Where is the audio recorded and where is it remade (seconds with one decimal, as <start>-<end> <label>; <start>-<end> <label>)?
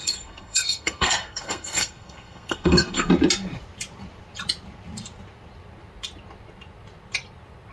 0.0-3.1 remade; 3.1-7.7 recorded